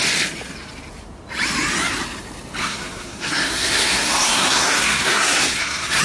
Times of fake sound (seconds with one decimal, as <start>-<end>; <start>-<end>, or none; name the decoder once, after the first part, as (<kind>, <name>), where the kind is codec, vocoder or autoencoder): 2.6-6.0 (codec, SNAC)